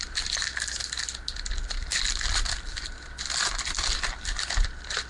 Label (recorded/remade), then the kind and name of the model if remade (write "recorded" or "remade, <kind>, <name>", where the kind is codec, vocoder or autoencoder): recorded